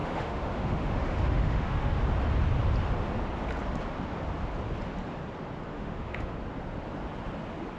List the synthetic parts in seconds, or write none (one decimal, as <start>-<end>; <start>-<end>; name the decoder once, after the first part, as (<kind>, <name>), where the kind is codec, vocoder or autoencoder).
0.0-2.0 (autoencoder, DAC-VAE); 5.7-6.3